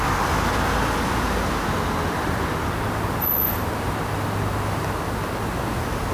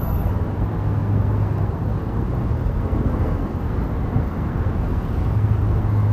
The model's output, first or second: second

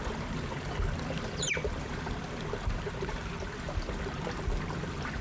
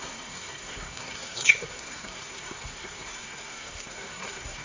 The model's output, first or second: second